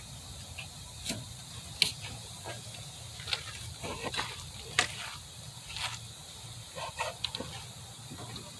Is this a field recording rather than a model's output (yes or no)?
yes